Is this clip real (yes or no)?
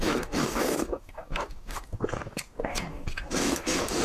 no